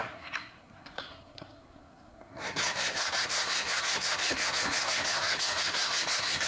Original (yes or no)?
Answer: no